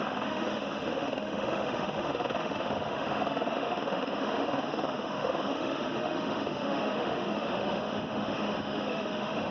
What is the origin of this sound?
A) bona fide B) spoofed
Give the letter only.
B